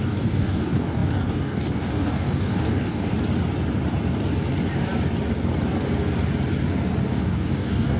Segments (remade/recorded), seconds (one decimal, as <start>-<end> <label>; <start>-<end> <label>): 0.0-3.1 remade; 3.1-7.1 recorded; 7.1-8.0 remade